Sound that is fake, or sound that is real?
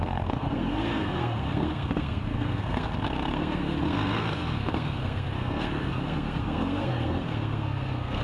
fake